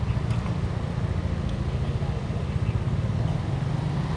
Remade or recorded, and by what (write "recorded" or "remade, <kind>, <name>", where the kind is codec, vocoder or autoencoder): recorded